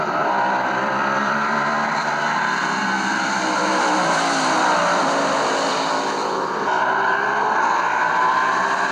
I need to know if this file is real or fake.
fake